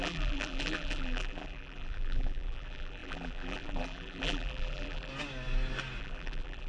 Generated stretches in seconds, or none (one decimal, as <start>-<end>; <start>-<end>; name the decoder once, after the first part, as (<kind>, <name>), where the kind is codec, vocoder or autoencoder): 0.0-5.1 (vocoder, BigVGAN v2); 6.0-6.7